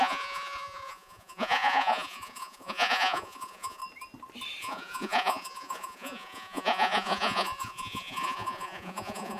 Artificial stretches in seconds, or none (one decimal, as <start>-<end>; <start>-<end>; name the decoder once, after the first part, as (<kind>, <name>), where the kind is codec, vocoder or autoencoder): 0.0-3.8 (vocoder, Vocos); 4.6-9.4